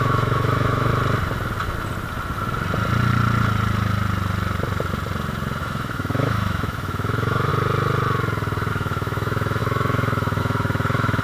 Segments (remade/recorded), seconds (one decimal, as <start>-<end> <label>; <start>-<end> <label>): 0.0-0.9 remade; 0.9-5.6 recorded; 5.6-7.5 remade; 7.5-8.7 recorded; 8.7-11.2 remade